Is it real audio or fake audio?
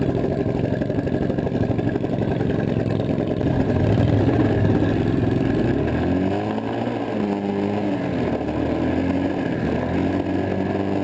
real